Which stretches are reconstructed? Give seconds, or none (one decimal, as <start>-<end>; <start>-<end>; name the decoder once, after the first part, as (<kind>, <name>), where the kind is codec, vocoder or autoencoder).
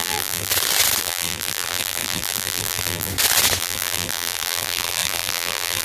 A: 0.0-0.5 (vocoder, BigVGAN v2); 1.0-3.1; 3.6-5.8